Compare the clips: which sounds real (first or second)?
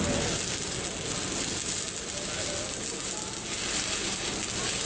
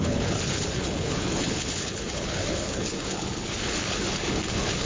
first